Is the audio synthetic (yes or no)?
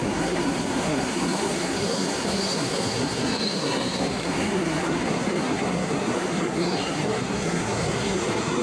yes